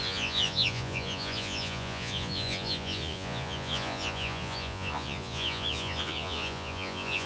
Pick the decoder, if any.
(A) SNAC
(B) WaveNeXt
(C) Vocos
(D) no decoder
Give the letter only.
C